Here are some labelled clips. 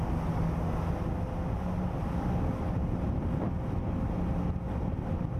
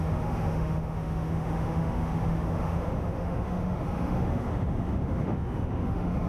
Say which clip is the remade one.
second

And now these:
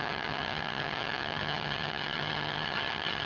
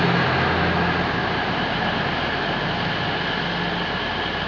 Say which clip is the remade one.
first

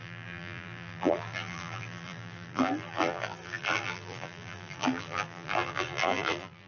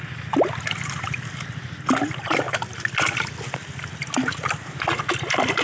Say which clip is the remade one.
first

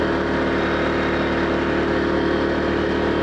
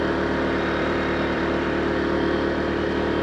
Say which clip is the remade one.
second